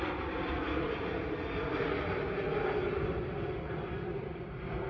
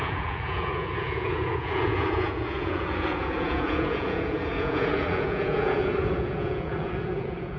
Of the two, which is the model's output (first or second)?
second